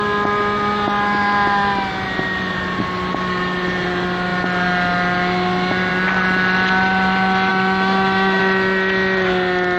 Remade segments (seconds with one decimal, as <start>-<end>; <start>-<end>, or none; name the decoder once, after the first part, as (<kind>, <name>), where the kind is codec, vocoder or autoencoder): 7.5-8.4 (autoencoder, DAC-VAE)